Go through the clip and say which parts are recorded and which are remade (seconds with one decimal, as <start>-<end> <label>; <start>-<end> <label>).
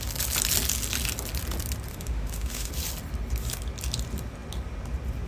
0.0-1.9 recorded; 1.9-2.7 remade; 2.7-5.3 recorded